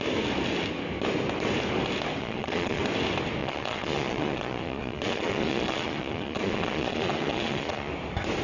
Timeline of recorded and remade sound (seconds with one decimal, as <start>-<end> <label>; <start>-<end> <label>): 0.0-2.2 recorded; 2.2-2.8 remade; 2.8-3.4 recorded; 3.4-7.9 remade; 7.9-8.4 recorded